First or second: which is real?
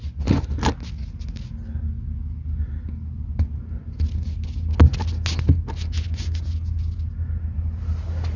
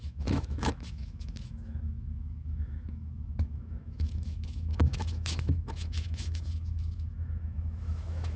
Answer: first